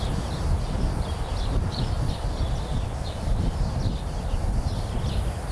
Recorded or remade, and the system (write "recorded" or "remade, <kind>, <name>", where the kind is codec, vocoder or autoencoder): recorded